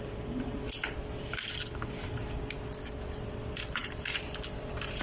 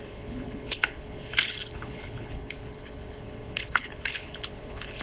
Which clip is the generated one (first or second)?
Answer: second